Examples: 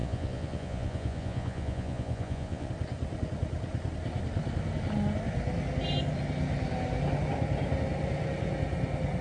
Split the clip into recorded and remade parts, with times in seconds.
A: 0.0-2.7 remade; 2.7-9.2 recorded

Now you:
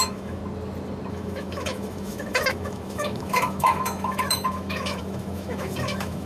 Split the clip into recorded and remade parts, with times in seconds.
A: 0.0-0.4 remade; 0.4-1.1 recorded; 1.1-6.3 remade

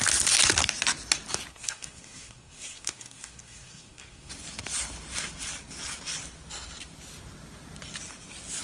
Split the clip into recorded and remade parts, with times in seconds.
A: 0.0-1.5 recorded; 1.5-4.3 remade; 4.3-8.6 recorded

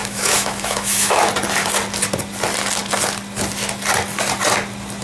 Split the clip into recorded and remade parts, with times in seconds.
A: 0.0-1.3 remade; 1.3-5.0 recorded

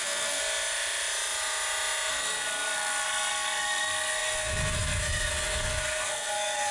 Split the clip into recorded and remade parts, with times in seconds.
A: 0.0-0.4 remade; 0.4-2.1 recorded; 2.1-6.7 remade

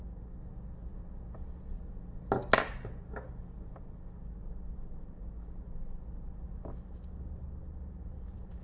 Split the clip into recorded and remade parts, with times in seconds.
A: 0.0-8.6 recorded